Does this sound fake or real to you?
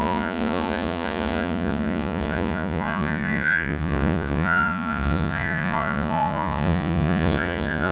fake